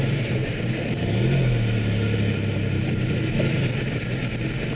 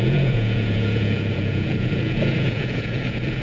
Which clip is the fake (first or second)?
second